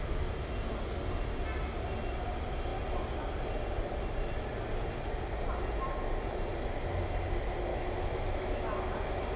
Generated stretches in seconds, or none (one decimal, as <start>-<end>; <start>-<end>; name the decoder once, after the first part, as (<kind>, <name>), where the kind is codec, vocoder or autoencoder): 7.7-8.8 (autoencoder, DAC-VAE)